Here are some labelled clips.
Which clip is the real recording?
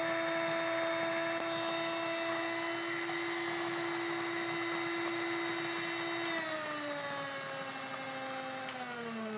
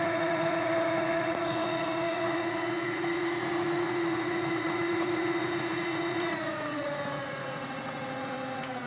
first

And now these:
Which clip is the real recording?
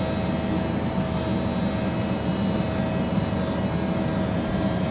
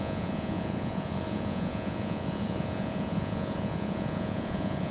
first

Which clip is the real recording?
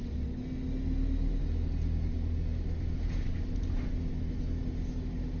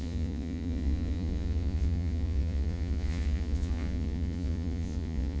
first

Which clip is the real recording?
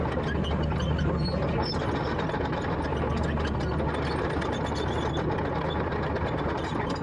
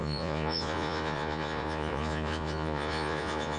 first